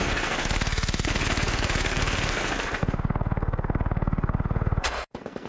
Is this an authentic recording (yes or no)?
no